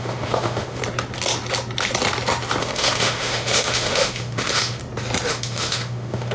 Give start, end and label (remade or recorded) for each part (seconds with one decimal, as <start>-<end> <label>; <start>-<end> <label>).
0.0-0.8 remade; 0.8-2.6 recorded; 2.6-4.8 remade; 4.8-5.3 recorded; 5.3-6.3 remade

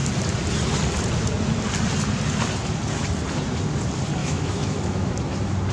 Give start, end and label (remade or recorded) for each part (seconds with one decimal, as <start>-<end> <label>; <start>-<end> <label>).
0.0-4.2 recorded; 4.2-5.1 remade; 5.1-5.7 recorded

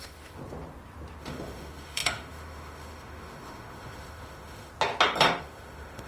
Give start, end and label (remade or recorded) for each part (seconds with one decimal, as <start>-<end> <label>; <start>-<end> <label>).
0.0-0.4 remade; 0.4-1.2 recorded; 1.2-4.7 remade; 4.7-5.4 recorded; 5.4-6.1 remade

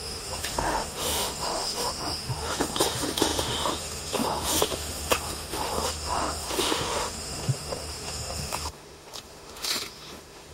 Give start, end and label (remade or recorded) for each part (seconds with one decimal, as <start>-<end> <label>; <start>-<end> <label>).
0.0-10.5 remade

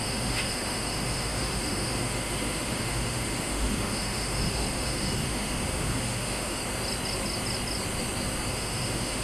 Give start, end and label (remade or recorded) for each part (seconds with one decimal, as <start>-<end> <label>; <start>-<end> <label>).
0.0-6.6 remade; 6.6-8.5 recorded; 8.5-9.2 remade

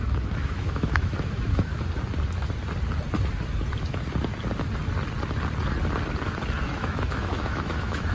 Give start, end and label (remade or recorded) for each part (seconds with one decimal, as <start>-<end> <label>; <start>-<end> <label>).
0.0-1.7 remade; 1.7-6.6 recorded; 6.6-8.1 remade

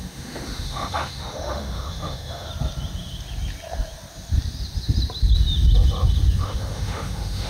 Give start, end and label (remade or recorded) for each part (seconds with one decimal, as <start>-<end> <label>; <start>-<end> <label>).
0.0-2.5 remade; 2.5-6.4 recorded; 6.4-7.5 remade